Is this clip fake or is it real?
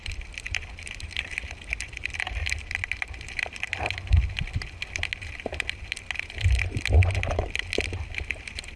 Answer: real